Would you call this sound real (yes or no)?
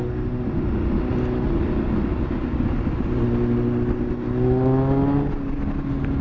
yes